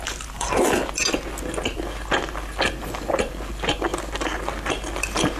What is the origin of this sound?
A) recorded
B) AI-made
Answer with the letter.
A